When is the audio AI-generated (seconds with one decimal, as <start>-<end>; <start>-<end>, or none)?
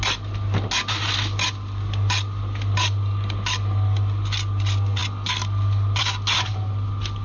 none